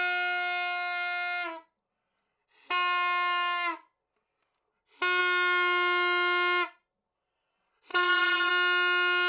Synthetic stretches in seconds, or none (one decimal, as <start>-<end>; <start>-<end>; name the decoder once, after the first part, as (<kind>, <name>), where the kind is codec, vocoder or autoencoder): 7.9-8.5 (vocoder, Vocos)